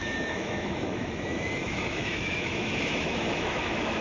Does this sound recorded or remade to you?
remade